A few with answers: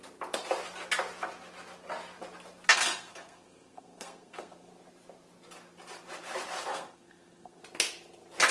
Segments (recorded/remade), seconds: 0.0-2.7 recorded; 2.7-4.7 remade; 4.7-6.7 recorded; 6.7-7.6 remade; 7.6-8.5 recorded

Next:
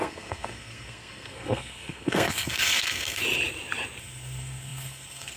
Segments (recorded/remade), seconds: 0.0-3.2 remade; 3.2-4.0 recorded; 4.0-5.4 remade